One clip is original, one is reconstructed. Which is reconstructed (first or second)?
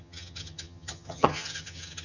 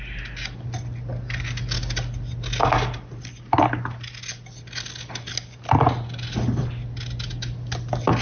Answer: first